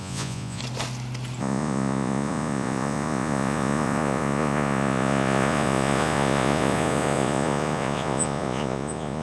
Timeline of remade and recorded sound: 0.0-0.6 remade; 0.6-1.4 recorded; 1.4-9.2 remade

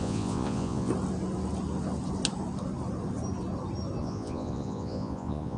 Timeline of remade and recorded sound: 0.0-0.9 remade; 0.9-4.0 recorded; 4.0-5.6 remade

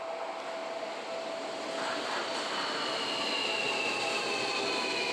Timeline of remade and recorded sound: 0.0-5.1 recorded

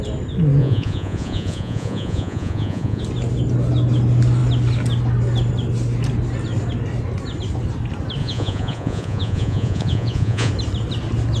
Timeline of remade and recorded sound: 0.0-0.6 recorded; 0.6-3.0 remade; 3.0-8.2 recorded; 8.2-10.5 remade; 10.5-11.4 recorded

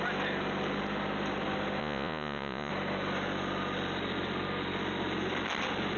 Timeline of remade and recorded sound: 0.0-1.8 recorded; 1.8-2.7 remade; 2.7-6.0 recorded

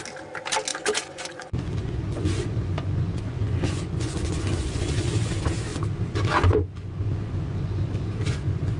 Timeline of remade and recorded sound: 0.0-0.7 recorded; 0.7-5.3 remade; 5.3-5.7 recorded; 5.7-8.8 remade

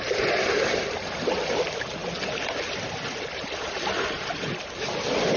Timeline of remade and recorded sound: 0.0-5.4 recorded